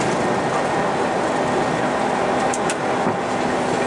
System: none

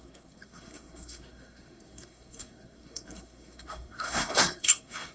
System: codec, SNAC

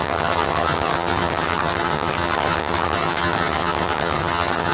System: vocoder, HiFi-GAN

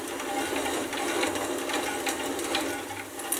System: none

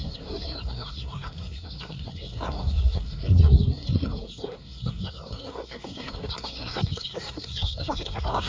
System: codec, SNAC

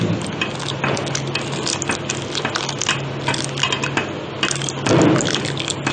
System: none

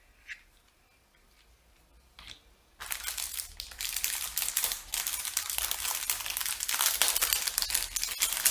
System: none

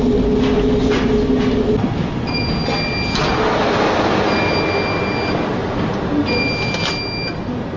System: none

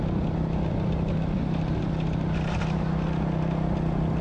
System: none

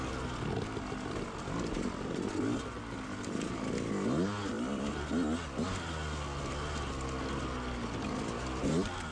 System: none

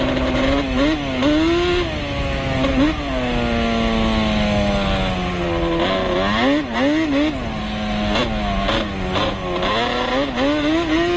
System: none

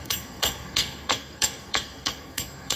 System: codec, SNAC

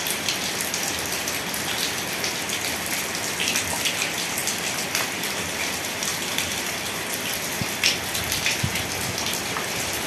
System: none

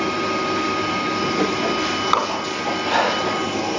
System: none